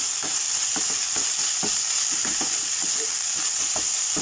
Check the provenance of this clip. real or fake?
real